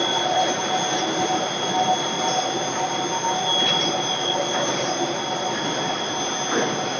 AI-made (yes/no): no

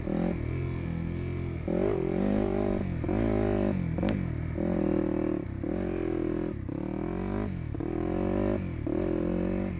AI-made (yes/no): no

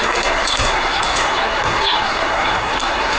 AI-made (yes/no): yes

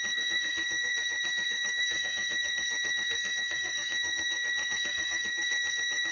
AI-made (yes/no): yes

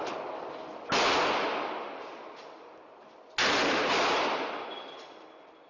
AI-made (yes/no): no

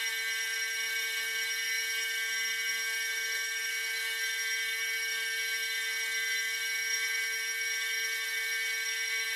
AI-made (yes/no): yes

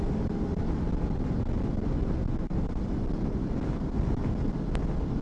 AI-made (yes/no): no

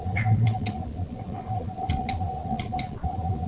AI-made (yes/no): yes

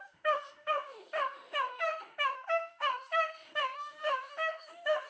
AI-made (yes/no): yes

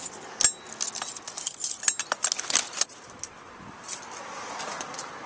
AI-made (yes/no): no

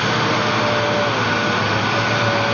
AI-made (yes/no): no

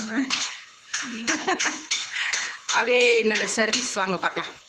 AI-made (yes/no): yes